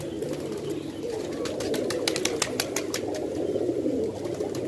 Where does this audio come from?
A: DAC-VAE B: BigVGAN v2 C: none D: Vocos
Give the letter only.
C